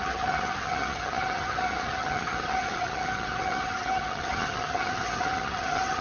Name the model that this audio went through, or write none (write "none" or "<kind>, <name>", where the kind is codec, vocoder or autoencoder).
vocoder, HiFi-GAN